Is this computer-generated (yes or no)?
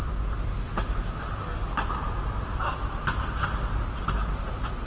no